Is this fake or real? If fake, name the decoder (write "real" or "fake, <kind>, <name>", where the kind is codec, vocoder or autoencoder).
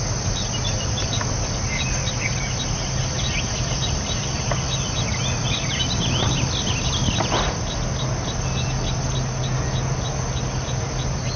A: real